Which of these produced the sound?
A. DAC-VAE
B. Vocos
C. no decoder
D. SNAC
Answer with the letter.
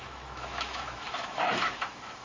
A